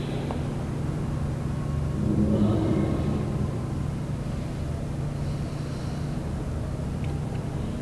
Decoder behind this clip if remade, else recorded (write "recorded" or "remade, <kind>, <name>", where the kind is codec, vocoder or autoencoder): recorded